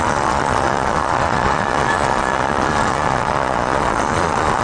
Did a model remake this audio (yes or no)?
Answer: yes